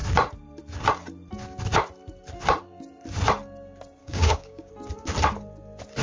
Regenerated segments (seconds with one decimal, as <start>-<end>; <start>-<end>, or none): 4.0-4.7